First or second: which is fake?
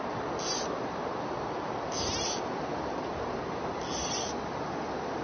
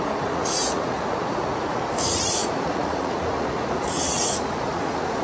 second